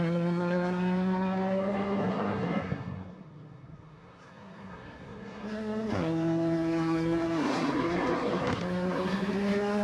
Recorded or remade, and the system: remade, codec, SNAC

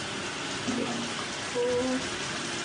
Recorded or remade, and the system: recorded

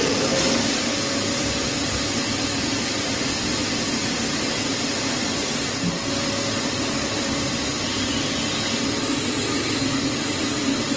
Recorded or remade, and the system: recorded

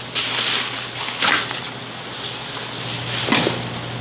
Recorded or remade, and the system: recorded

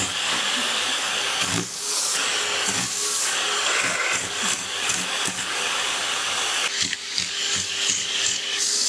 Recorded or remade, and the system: remade, codec, DAC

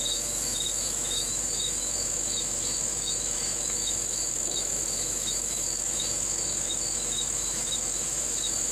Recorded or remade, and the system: remade, autoencoder, DAC-VAE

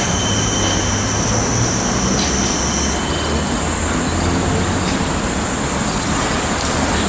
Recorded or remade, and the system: recorded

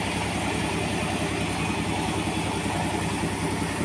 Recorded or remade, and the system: recorded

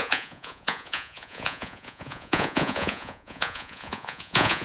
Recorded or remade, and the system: remade, vocoder, Vocos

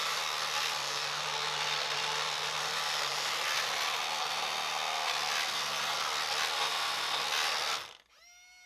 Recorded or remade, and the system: recorded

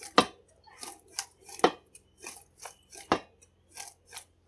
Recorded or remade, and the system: recorded